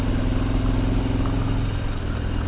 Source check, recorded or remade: recorded